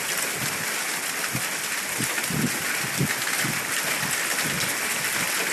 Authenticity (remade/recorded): recorded